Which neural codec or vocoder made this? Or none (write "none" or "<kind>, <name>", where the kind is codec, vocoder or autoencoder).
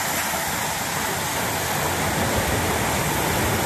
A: none